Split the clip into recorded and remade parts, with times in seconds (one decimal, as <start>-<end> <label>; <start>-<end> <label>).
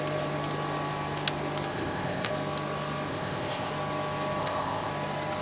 0.0-1.7 recorded; 1.7-2.3 remade; 2.3-3.1 recorded; 3.1-3.7 remade; 3.7-4.4 recorded; 4.4-4.9 remade; 4.9-5.4 recorded